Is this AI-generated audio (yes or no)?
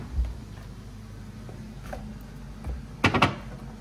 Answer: no